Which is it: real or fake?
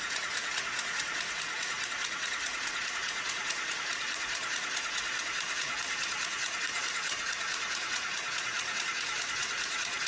fake